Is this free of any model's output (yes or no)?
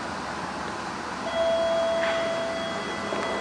yes